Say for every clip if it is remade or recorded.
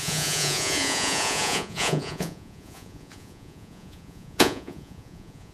remade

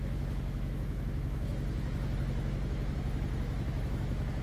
remade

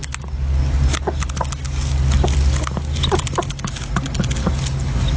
recorded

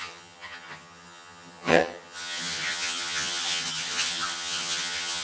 remade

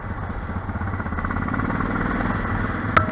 recorded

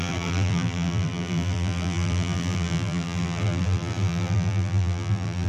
remade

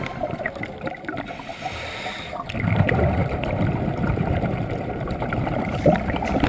remade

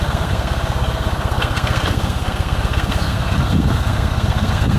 remade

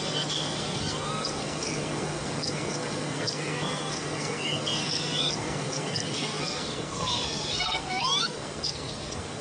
remade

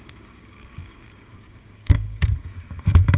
remade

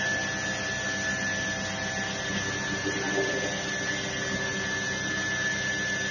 recorded